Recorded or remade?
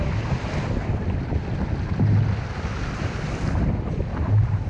recorded